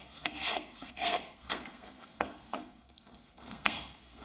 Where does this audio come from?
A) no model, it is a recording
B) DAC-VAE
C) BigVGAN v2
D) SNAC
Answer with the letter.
D